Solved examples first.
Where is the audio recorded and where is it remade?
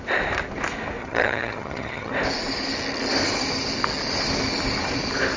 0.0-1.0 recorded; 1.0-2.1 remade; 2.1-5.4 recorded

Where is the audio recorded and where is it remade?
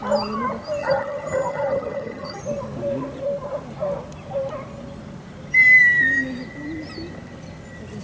0.0-0.8 recorded; 0.8-2.4 remade; 2.4-8.0 recorded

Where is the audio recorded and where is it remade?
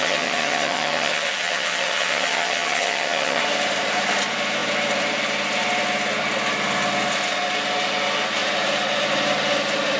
0.0-3.4 remade; 3.4-10.0 recorded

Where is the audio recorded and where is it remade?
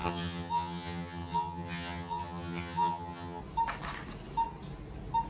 0.0-3.4 remade; 3.4-5.3 recorded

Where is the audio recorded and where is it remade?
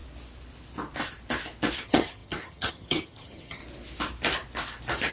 0.0-1.8 recorded; 1.8-3.6 remade; 3.6-5.1 recorded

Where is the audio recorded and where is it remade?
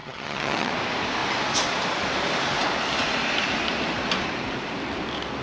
0.0-0.7 remade; 0.7-5.4 recorded